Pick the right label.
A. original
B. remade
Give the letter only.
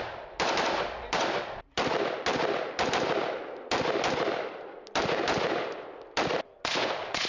A